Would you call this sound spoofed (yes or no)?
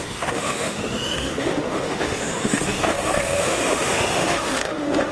yes